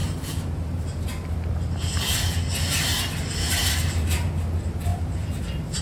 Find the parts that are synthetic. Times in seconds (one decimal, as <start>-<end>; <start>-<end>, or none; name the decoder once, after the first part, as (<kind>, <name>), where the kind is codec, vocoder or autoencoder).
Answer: 0.0-1.1 (vocoder, BigVGAN v2); 3.6-4.3; 4.9-5.8